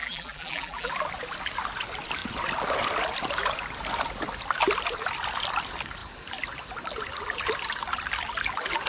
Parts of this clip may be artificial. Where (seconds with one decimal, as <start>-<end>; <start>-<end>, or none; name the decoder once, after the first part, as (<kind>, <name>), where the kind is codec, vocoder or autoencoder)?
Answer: 0.0-0.9 (vocoder, BigVGAN v2)